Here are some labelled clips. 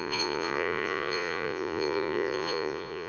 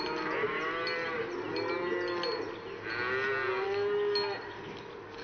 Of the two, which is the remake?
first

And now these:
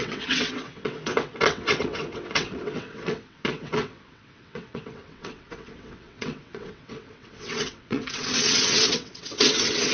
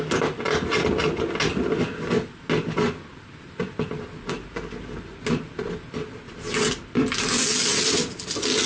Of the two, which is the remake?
first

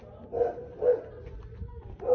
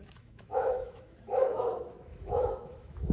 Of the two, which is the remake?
second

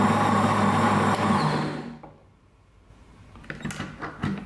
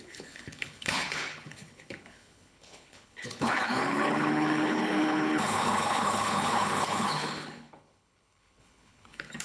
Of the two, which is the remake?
second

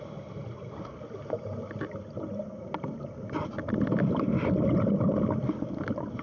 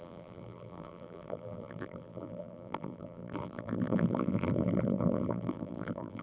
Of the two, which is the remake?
second